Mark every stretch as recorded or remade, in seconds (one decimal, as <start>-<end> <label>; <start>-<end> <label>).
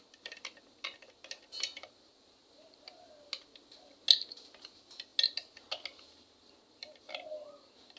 0.0-8.0 recorded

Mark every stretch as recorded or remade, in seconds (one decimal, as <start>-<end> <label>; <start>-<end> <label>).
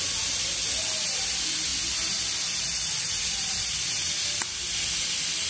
0.0-5.5 recorded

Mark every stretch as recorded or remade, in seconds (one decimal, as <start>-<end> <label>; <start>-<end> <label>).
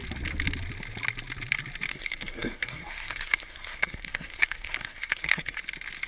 0.0-1.9 recorded; 1.9-5.6 remade; 5.6-6.1 recorded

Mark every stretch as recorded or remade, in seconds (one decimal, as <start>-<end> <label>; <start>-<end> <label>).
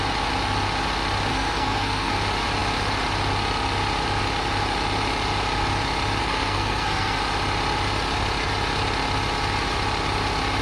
0.0-1.3 recorded; 1.3-2.1 remade; 2.1-6.2 recorded; 6.2-7.2 remade; 7.2-10.6 recorded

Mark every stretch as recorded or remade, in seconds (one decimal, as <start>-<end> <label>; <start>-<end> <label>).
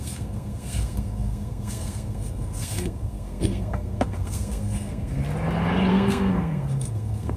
0.0-5.2 remade; 5.2-5.9 recorded; 5.9-7.4 remade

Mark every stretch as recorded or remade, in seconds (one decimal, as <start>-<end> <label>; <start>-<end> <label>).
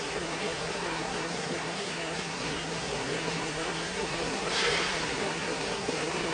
0.0-6.3 remade